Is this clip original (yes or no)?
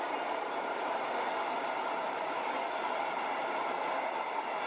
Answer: yes